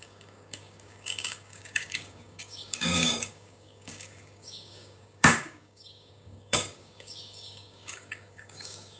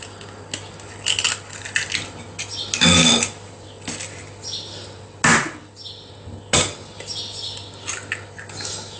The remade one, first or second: first